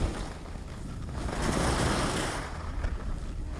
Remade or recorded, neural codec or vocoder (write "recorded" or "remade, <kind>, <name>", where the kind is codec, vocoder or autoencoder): recorded